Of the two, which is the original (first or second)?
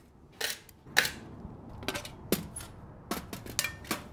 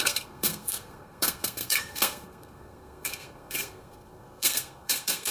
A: first